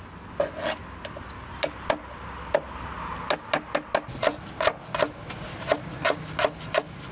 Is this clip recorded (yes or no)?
yes